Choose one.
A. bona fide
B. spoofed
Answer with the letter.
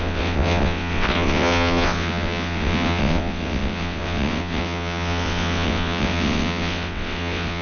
B